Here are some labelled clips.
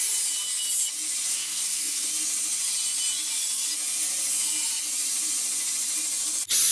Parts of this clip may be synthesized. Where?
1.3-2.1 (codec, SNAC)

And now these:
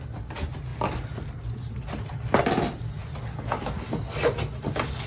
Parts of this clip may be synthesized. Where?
none

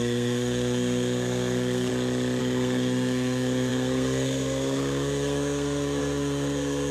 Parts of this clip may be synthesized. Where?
0.0-1.9 (codec, SNAC); 2.4-6.9

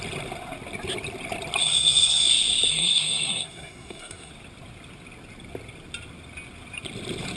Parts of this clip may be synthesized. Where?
1.6-2.2 (codec, SNAC); 2.7-4.3